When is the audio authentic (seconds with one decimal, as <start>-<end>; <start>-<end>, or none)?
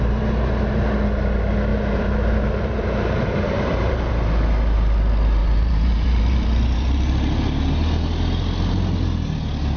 0.0-1.7; 4.1-5.4; 7.1-9.8